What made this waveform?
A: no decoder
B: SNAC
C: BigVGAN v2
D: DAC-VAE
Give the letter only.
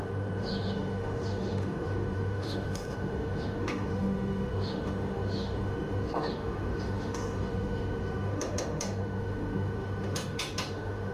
D